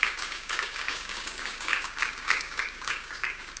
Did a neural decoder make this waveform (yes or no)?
yes